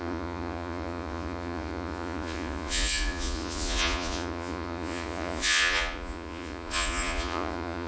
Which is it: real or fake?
fake